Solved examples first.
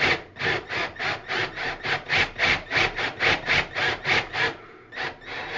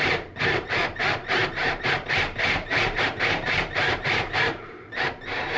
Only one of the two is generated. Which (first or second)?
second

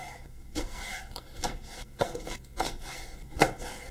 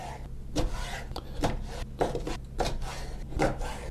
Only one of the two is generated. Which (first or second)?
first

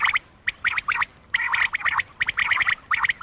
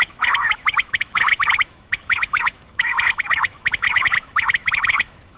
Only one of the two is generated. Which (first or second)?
second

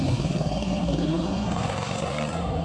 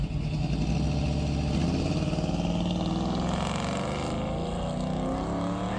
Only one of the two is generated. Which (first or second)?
first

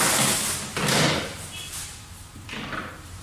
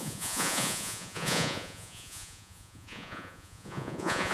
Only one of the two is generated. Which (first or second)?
second